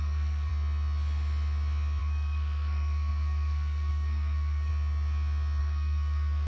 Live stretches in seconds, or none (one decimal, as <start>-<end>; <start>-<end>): 0.5-2.0; 4.7-5.6